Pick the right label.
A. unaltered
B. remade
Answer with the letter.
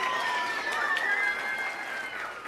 A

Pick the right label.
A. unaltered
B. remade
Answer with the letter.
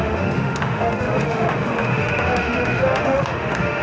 B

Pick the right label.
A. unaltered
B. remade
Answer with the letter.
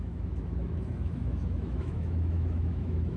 B